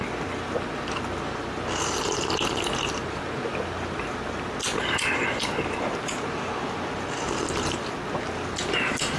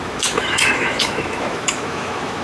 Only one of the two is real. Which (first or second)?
first